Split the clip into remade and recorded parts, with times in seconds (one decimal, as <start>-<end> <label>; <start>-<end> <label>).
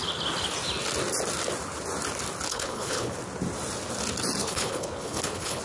0.0-2.5 recorded; 2.5-3.2 remade; 3.2-4.4 recorded; 4.4-5.6 remade